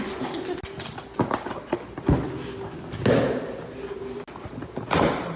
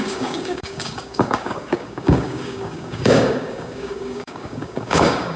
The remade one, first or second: second